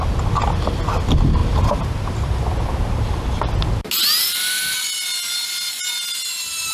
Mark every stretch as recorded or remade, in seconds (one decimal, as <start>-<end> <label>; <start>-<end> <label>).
0.0-1.4 recorded; 1.4-2.5 remade; 2.5-6.7 recorded